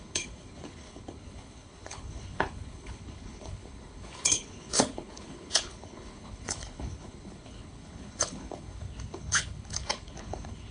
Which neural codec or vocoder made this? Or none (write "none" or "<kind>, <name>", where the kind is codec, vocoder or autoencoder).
codec, HILCodec